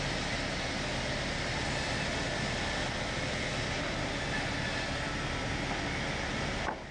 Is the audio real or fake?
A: real